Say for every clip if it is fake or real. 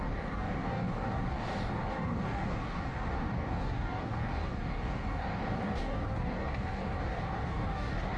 fake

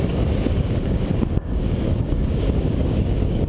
fake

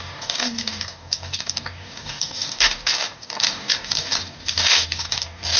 fake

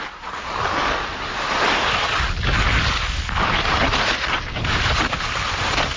real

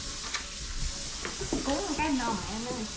real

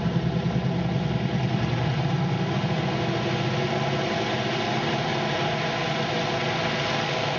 real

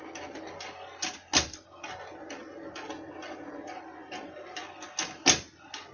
real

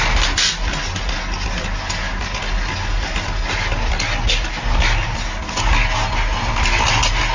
real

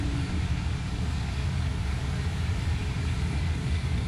fake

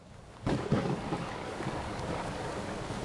fake